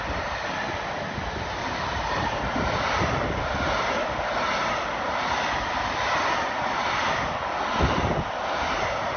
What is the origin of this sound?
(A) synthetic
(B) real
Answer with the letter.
B